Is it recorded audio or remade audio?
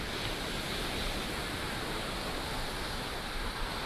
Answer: recorded